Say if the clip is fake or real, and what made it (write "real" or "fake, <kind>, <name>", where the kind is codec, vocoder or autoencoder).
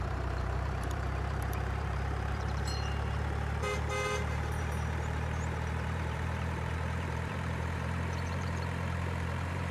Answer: fake, vocoder, BigVGAN v2